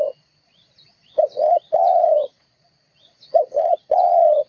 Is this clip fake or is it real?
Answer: fake